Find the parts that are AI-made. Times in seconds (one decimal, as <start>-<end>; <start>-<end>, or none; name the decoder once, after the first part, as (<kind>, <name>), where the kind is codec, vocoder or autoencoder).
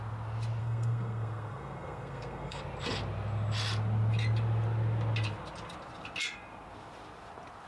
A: 0.6-2.6 (codec, SNAC)